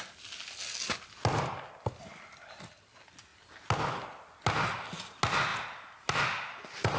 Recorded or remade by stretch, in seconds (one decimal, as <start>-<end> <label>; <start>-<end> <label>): 0.0-7.0 recorded